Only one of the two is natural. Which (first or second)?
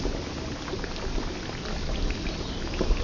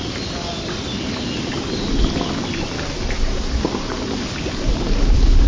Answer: first